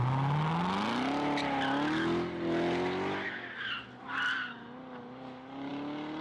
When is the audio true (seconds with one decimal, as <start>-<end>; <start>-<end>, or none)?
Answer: 0.0-6.2